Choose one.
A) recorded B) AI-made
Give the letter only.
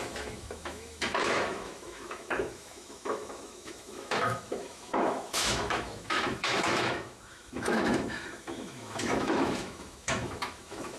B